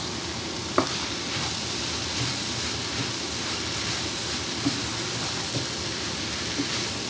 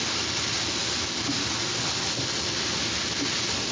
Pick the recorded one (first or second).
second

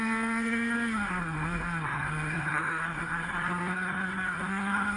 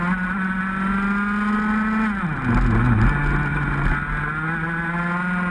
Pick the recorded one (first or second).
second